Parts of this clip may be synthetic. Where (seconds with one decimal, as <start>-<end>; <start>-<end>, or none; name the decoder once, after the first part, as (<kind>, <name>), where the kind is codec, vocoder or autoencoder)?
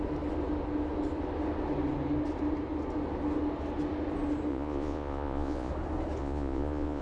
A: 4.5-5.7 (vocoder, Vocos); 6.2-7.0